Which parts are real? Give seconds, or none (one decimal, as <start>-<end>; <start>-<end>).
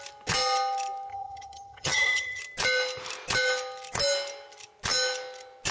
0.0-1.1; 2.4-5.7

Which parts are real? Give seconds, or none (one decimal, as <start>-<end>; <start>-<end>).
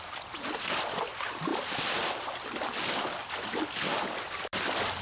0.0-5.0